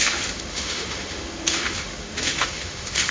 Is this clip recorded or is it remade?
remade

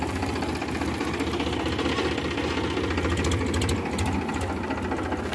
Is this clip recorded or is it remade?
recorded